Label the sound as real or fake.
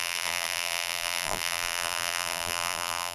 fake